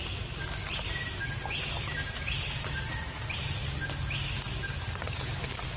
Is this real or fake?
real